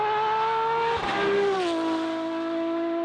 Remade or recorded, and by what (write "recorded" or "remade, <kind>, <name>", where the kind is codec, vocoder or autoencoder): recorded